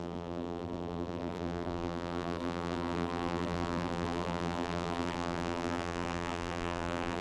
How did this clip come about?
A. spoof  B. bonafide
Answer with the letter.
A